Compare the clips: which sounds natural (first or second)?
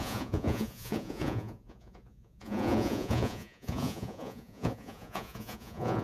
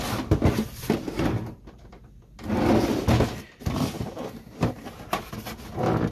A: second